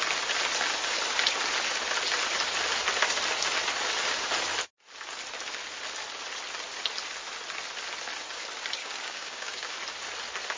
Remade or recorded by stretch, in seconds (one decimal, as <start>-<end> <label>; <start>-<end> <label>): 0.0-8.8 recorded; 8.8-9.8 remade; 9.8-10.6 recorded